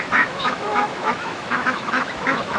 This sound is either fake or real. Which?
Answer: fake